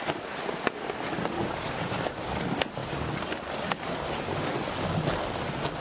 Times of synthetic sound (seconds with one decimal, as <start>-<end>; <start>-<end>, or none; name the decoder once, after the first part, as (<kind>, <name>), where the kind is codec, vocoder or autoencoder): none